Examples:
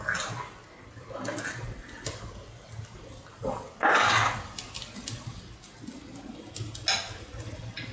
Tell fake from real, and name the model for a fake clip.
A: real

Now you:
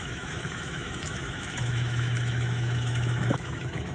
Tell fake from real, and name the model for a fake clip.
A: fake, autoencoder, DAC-VAE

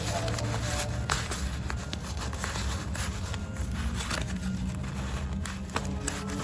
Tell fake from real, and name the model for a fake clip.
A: real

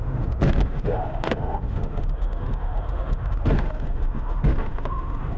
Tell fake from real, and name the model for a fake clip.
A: fake, autoencoder, DAC-VAE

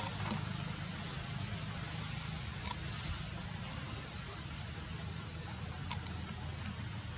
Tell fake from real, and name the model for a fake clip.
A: real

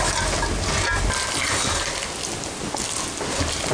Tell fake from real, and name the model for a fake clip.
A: real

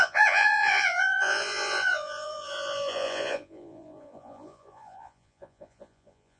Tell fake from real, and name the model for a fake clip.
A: fake, vocoder, Vocos